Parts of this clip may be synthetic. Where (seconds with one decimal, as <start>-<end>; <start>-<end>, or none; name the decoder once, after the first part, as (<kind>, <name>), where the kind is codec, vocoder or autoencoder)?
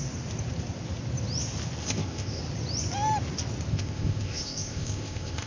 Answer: 1.8-2.4 (codec, ZipCodec); 3.7-5.5